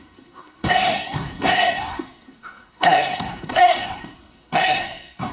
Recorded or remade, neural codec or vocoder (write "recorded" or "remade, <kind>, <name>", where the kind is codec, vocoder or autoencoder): remade, codec, SNAC